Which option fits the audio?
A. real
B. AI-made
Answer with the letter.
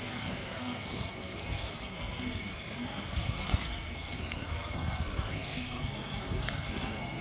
B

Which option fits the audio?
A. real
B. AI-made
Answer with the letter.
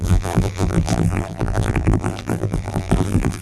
B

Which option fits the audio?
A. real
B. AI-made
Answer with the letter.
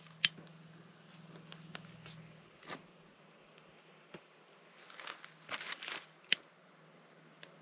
A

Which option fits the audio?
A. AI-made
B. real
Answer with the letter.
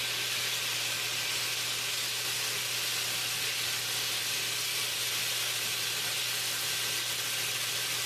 B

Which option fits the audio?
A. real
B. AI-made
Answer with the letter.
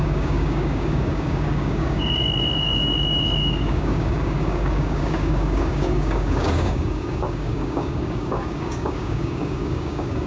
B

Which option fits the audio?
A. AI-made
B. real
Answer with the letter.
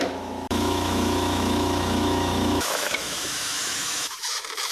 A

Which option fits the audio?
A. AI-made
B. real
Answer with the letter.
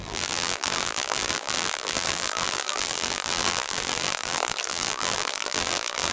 A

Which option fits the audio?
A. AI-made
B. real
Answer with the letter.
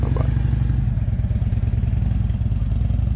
B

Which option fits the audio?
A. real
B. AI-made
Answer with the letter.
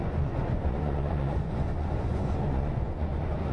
B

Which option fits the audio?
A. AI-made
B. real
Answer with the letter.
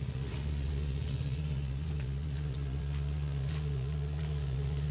A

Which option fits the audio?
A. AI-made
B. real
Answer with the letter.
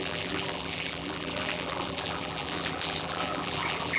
A